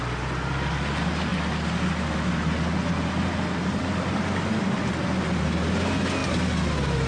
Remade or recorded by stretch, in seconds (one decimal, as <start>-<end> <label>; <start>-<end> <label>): 0.0-7.1 recorded